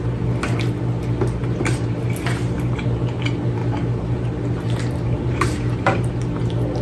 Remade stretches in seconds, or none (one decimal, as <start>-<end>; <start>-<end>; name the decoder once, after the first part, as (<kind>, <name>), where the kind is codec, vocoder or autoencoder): 1.4-3.1 (vocoder, BigVGAN v2); 3.6-6.1